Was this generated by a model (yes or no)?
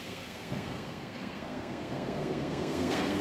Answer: yes